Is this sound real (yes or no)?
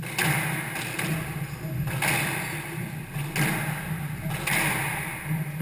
yes